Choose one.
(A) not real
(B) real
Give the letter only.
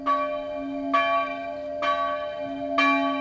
B